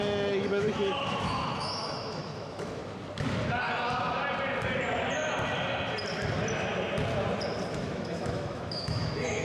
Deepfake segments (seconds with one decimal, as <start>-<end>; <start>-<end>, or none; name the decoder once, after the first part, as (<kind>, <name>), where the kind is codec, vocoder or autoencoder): 0.0-2.8 (autoencoder, DAC-VAE); 7.7-9.4